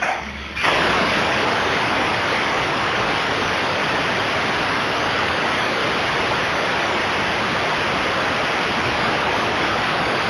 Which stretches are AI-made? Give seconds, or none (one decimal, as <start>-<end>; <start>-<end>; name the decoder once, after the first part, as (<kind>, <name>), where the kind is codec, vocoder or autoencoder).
0.0-3.8 (codec, DAC); 4.6-5.8; 6.4-7.0; 8.8-10.3